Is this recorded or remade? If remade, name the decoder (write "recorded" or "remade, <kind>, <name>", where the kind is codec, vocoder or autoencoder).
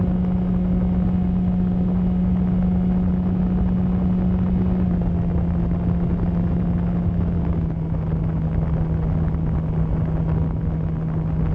recorded